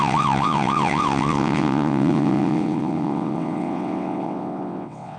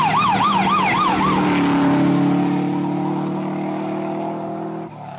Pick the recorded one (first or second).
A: second